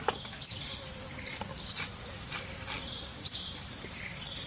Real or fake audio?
real